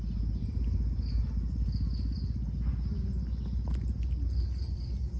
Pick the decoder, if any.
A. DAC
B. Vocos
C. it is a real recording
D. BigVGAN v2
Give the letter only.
C